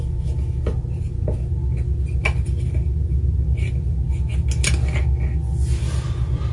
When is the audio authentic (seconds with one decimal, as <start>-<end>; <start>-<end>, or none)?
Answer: 0.0-6.5

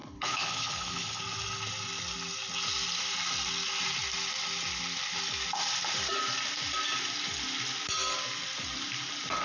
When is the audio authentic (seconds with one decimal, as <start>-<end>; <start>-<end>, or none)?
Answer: 1.2-9.4

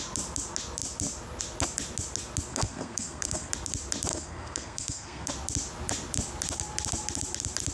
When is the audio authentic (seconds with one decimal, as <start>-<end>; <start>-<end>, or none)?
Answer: 0.0-2.5; 3.5-4.1; 5.3-7.7

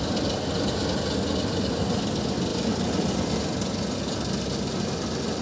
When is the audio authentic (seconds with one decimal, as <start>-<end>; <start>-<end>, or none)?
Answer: 0.0-5.4

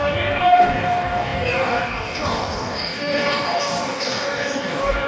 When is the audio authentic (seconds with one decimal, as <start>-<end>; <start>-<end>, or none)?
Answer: none

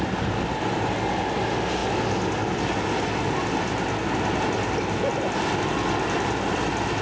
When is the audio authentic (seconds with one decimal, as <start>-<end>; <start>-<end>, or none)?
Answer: 0.0-7.0